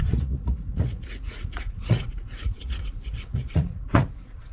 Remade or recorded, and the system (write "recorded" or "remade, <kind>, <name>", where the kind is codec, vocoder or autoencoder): remade, vocoder, Vocos